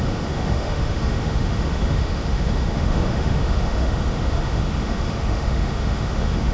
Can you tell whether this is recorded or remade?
remade